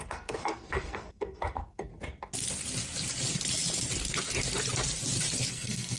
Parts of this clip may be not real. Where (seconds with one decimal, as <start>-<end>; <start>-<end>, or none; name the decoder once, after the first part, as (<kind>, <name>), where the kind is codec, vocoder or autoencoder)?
0.0-1.9 (codec, SNAC); 5.5-6.0